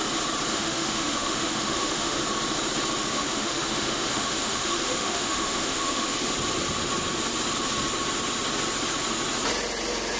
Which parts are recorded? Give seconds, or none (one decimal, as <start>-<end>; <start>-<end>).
0.0-0.5; 2.2-3.1; 6.1-10.2